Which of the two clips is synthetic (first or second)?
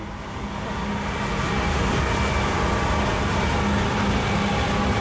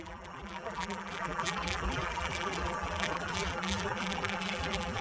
second